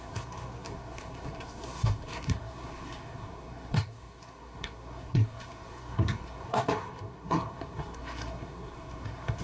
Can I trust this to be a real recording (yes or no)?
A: no